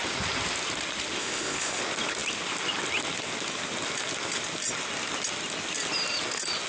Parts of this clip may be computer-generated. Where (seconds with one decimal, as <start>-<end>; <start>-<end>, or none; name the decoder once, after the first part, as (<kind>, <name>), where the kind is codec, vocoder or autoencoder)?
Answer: 1.2-1.8 (codec, ZipCodec)